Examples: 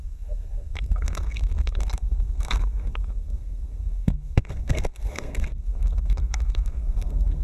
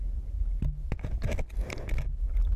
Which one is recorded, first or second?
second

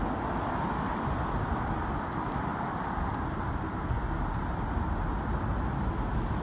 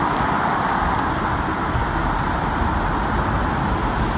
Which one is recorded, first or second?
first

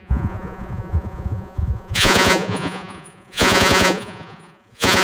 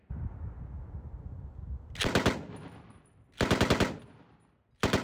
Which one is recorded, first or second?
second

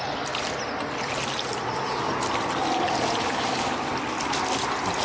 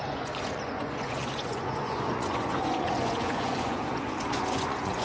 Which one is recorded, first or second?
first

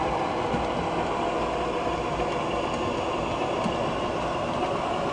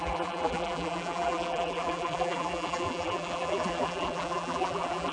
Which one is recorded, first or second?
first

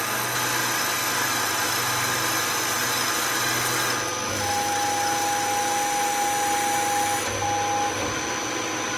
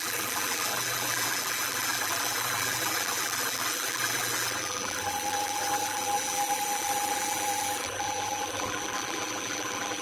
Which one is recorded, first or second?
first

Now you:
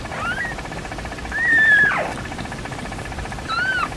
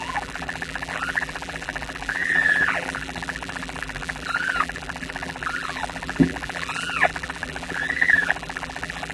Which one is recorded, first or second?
first